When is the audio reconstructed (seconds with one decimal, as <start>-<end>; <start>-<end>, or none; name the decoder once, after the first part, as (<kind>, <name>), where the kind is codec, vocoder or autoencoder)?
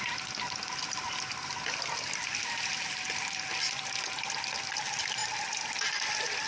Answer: none